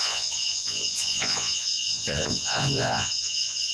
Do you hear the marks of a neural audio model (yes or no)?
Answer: yes